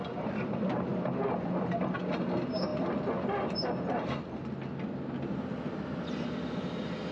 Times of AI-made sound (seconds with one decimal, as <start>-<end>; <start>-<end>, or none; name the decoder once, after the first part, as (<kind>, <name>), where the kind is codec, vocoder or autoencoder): none